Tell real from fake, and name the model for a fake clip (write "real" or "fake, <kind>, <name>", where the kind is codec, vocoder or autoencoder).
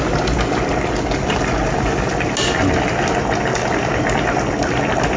real